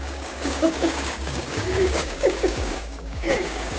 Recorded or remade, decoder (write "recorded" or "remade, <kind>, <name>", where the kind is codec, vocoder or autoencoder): remade, codec, DAC